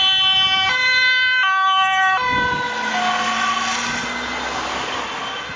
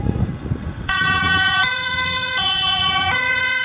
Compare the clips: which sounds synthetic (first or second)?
second